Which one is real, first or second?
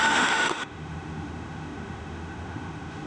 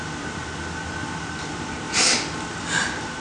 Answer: second